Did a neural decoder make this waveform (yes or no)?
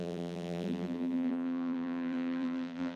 yes